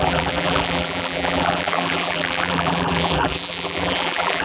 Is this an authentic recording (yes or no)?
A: no